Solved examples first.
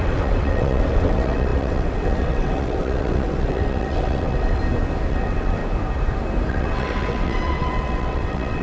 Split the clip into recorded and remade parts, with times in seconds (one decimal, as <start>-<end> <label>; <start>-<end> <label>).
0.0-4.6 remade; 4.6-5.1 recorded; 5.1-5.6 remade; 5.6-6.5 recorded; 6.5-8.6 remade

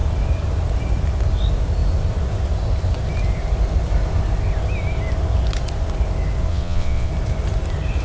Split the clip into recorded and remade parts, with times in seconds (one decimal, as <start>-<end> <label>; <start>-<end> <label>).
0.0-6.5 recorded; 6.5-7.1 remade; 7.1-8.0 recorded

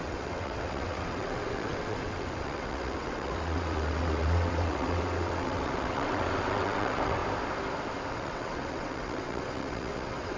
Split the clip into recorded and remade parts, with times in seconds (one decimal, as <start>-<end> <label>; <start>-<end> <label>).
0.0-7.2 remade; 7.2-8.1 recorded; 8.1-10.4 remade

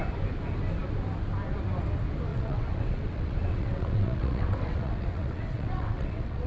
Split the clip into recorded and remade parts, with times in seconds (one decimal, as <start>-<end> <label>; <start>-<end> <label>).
0.0-2.3 recorded; 2.3-6.5 remade

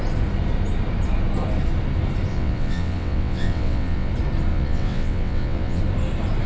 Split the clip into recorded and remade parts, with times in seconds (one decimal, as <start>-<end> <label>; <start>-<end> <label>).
0.0-2.3 recorded; 2.3-4.1 remade; 4.1-4.5 recorded; 4.5-5.8 remade; 5.8-6.5 recorded

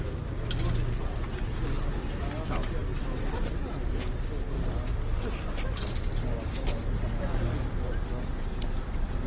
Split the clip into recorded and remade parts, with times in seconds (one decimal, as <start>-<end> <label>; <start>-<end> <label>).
0.0-9.3 recorded